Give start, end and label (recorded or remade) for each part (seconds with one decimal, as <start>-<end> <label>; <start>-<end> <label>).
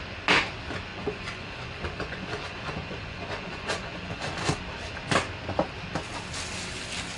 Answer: 0.0-0.9 recorded; 0.9-4.6 remade; 4.6-7.2 recorded